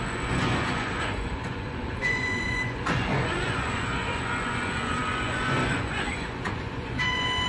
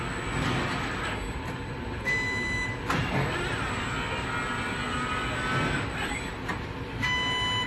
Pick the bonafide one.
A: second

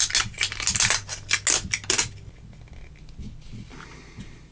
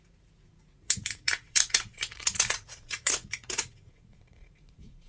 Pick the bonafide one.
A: first